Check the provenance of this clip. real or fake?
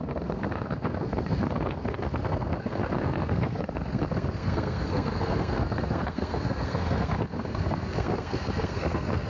fake